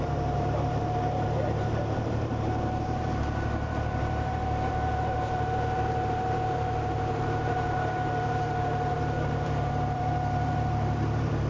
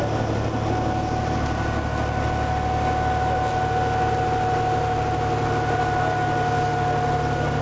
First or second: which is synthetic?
first